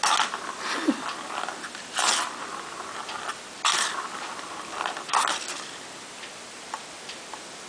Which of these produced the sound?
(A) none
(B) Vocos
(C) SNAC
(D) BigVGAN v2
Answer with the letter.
A